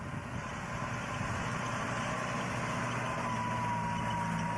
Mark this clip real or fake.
real